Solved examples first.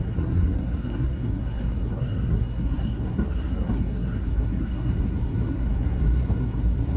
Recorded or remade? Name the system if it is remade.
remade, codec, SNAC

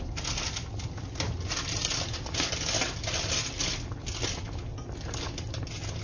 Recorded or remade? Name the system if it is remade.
recorded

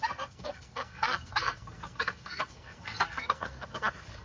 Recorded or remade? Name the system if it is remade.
remade, codec, SNAC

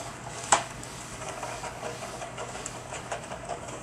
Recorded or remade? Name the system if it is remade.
remade, codec, DAC